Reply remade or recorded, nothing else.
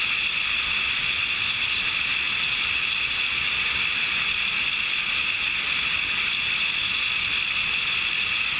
recorded